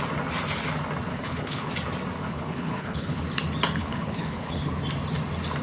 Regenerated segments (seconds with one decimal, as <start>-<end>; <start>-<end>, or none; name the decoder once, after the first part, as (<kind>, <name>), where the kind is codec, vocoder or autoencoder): 1.1-1.7 (codec, HILCodec); 2.2-3.2; 3.8-4.7